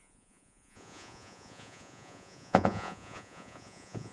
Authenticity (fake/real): fake